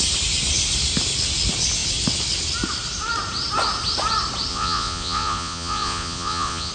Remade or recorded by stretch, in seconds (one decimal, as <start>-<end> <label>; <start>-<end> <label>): 0.0-4.5 recorded; 4.5-6.7 remade